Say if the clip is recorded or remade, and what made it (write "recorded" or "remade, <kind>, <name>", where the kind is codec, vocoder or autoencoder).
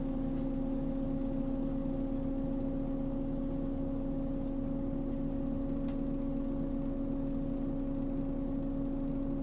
recorded